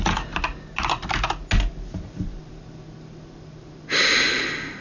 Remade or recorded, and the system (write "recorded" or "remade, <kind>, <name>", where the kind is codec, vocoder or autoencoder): recorded